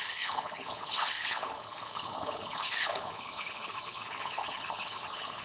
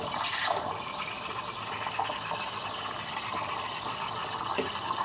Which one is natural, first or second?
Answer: second